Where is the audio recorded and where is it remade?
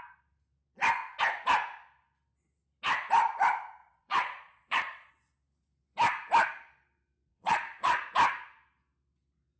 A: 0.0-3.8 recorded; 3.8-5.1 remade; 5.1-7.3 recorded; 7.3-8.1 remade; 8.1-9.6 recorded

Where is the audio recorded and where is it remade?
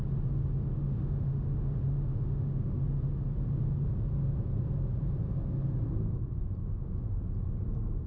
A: 0.0-0.8 recorded; 0.8-2.8 remade; 2.8-6.6 recorded; 6.6-7.2 remade; 7.2-8.1 recorded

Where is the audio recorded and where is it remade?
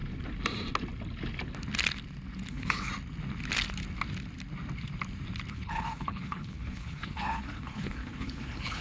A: 0.0-2.5 recorded; 2.5-2.9 remade; 2.9-5.5 recorded; 5.5-8.8 remade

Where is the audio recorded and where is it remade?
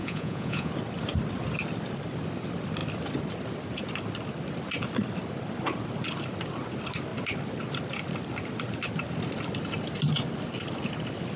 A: 0.0-0.7 remade; 0.7-11.4 recorded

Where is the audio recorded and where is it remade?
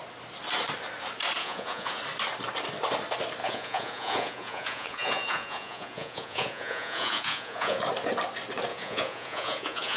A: 0.0-1.4 recorded; 1.4-2.0 remade; 2.0-3.4 recorded; 3.4-7.8 remade; 7.8-8.7 recorded; 8.7-10.0 remade